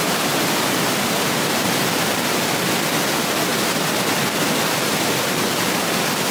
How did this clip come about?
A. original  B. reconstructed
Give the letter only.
A